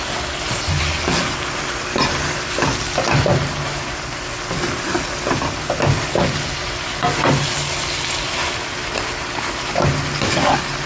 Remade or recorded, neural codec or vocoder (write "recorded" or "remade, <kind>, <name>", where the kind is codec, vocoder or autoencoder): recorded